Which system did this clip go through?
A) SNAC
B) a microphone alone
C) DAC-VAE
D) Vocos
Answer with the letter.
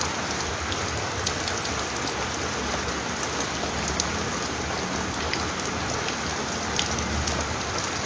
B